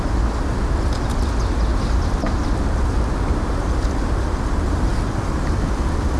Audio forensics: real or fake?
real